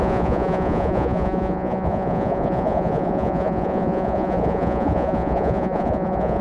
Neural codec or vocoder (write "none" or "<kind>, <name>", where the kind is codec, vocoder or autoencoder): vocoder, Vocos